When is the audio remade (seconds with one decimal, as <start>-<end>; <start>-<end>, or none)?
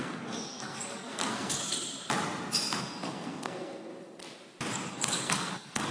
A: 0.0-1.6; 2.8-3.9; 4.9-5.9